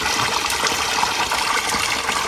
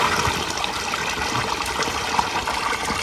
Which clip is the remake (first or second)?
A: first